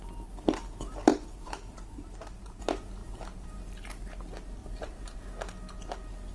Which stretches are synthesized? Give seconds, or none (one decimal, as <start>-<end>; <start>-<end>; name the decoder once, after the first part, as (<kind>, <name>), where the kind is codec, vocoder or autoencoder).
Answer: 1.1-2.6 (vocoder, BigVGAN v2); 3.0-3.6; 4.6-5.2